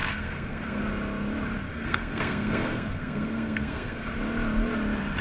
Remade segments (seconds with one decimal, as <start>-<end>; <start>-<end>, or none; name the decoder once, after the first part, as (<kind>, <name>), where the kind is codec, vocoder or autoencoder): 0.0-0.8 (codec, SNAC); 1.7-4.1